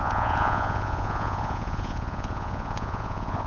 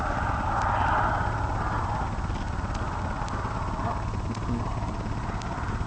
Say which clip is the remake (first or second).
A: first